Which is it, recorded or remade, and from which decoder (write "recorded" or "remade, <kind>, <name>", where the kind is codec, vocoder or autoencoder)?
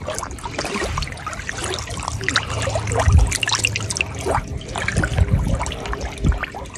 recorded